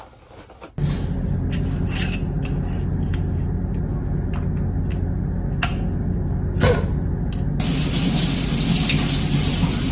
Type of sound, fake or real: real